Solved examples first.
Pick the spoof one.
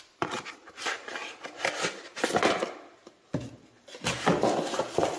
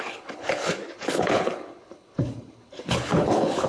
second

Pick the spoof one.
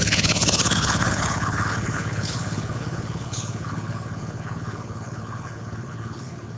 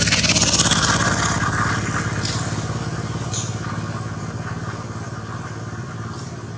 first